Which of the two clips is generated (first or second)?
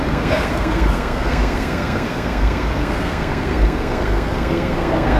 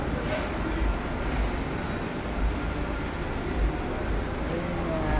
first